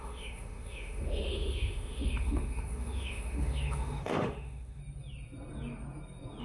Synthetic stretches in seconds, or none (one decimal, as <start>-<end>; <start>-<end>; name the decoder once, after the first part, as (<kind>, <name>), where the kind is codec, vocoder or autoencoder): 0.0-4.8 (autoencoder, DAC-VAE)